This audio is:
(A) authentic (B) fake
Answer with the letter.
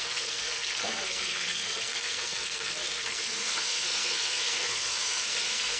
B